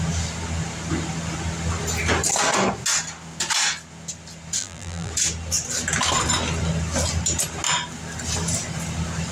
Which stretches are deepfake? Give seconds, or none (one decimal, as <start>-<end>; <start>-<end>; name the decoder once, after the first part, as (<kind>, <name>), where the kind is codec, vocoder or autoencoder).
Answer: 4.6-5.1 (vocoder, BigVGAN v2)